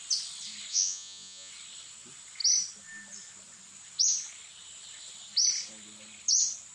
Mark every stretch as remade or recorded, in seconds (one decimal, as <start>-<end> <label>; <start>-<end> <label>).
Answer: 0.0-0.7 recorded; 0.7-1.5 remade; 1.5-6.7 recorded